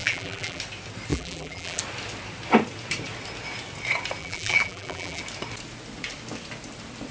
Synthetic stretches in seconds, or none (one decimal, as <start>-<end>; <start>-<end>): 0.0-0.6; 1.1-1.8; 4.2-5.2